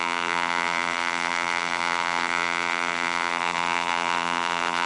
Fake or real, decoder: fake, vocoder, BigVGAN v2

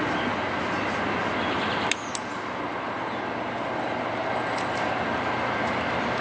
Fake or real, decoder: real